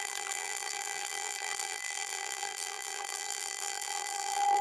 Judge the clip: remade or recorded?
remade